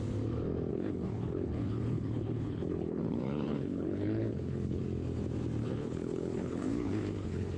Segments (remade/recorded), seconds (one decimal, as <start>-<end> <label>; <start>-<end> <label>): 0.0-0.7 recorded; 0.7-4.8 remade; 4.8-5.6 recorded; 5.6-7.6 remade